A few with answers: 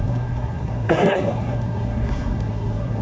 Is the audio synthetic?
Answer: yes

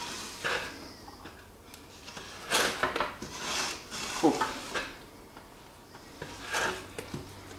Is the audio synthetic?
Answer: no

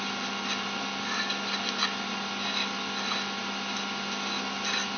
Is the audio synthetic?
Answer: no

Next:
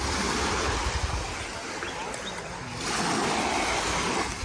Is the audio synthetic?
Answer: no